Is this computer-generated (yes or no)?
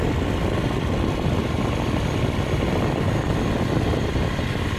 no